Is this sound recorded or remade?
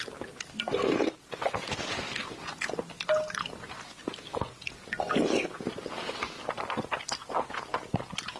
recorded